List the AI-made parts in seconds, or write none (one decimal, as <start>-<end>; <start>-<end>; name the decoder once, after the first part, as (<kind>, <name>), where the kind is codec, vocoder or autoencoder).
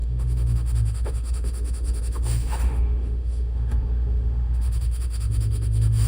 0.0-6.1 (autoencoder, DAC-VAE)